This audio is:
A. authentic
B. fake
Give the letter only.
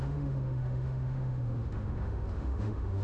B